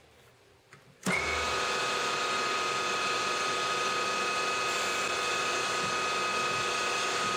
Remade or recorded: recorded